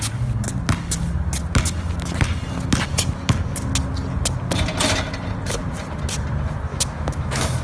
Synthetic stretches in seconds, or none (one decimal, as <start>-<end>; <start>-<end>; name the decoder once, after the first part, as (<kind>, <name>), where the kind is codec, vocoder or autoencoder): 6.7-7.6 (autoencoder, DAC-VAE)